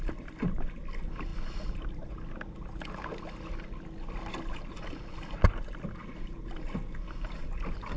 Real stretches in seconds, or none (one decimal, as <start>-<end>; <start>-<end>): 0.0-8.0